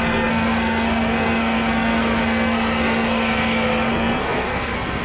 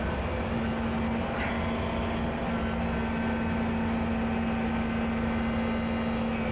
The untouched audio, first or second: second